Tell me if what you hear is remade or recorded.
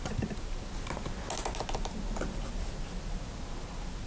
recorded